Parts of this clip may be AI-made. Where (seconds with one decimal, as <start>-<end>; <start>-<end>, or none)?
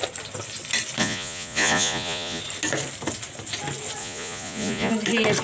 1.0-2.4; 4.0-4.9